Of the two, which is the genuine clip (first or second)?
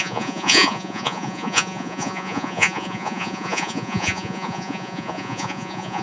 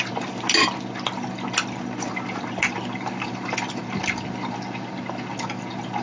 second